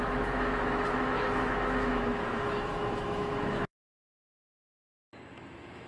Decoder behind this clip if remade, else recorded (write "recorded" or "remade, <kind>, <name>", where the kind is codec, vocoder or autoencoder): remade, autoencoder, DAC-VAE